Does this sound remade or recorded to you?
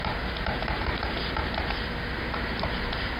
recorded